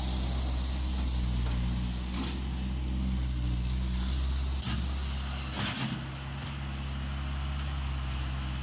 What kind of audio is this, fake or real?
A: real